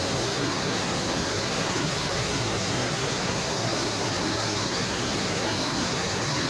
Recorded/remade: remade